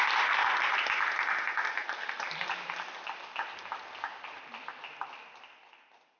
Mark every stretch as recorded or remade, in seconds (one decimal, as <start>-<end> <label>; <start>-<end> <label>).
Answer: 0.0-6.2 recorded